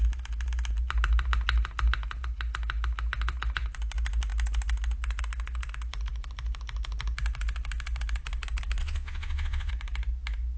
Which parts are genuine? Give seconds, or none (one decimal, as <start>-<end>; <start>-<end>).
0.0-8.8; 9.7-10.6